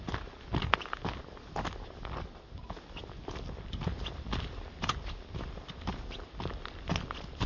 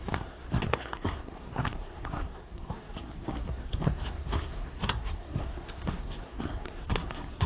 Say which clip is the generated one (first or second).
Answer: second